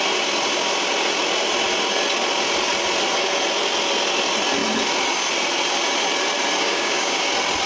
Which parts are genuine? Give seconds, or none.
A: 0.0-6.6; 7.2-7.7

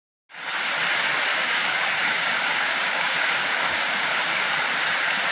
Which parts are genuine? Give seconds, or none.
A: 0.0-1.3; 4.5-5.3

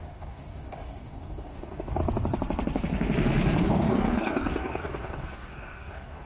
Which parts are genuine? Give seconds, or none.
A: 2.0-3.6

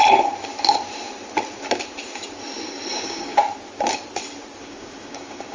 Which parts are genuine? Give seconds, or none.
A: 0.0-2.9; 3.4-4.6

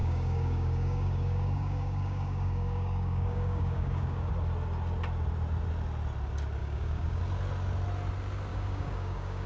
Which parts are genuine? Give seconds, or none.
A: 4.3-6.6; 7.2-8.5

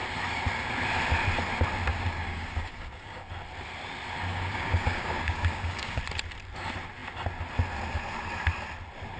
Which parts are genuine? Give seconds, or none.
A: 0.0-1.9; 3.3-4.3; 6.0-9.2

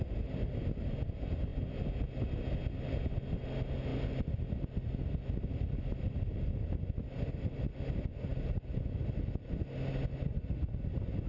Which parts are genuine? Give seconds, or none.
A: 0.0-11.3